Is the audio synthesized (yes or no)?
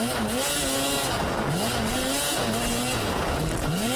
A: no